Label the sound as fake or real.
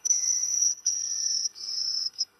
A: fake